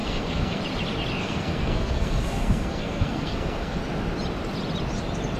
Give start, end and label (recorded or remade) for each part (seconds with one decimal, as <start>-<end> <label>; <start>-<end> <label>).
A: 0.0-0.6 remade; 0.6-1.2 recorded; 1.2-3.8 remade; 3.8-5.4 recorded